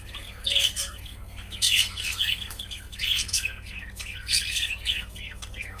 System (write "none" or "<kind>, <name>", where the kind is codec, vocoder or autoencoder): codec, SNAC